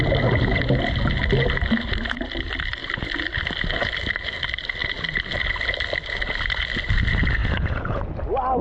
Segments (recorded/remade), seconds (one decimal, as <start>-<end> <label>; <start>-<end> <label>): 0.0-7.4 recorded; 7.4-8.1 remade; 8.1-8.6 recorded